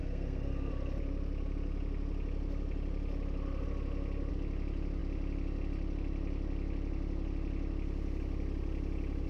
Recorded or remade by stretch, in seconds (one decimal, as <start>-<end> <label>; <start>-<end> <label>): 0.0-0.7 remade; 0.7-9.3 recorded